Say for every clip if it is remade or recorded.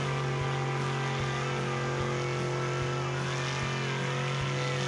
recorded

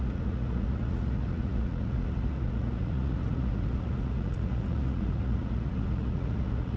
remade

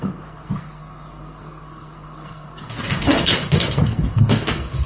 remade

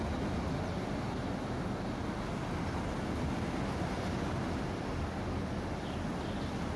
recorded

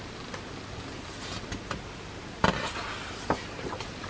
recorded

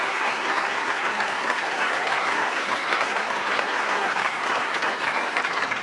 remade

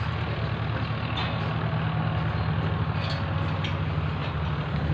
recorded